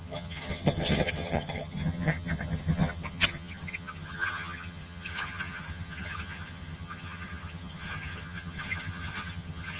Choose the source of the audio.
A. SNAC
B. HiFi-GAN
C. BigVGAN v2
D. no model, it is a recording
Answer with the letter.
B